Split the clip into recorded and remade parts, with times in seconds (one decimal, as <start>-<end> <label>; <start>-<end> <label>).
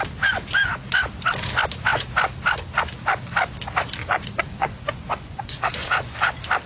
0.0-4.0 recorded; 4.0-6.3 remade; 6.3-6.7 recorded